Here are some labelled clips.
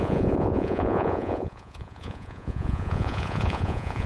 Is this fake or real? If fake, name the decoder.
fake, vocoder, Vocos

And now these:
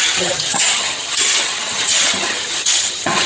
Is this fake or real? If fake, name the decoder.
fake, vocoder, HiFi-GAN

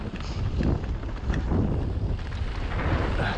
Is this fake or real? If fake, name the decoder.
real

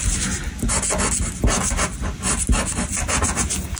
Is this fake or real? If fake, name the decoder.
real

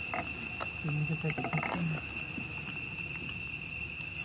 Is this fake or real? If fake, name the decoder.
real